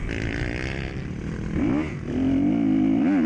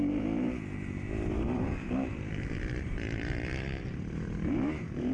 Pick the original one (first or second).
first